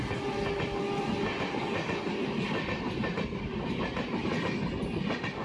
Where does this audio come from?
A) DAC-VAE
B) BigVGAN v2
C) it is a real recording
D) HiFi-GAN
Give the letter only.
C